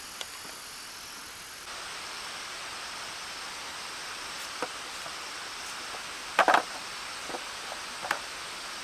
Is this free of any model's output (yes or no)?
yes